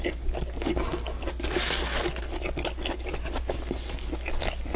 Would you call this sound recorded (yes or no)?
yes